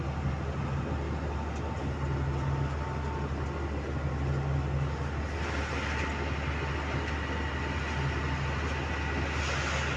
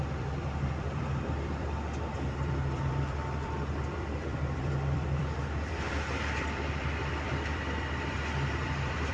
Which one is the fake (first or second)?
second